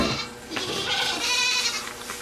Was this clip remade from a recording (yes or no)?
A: no